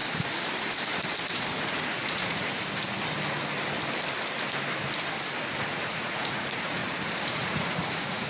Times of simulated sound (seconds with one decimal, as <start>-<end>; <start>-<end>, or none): 1.3-2.6; 5.7-6.8; 7.3-8.3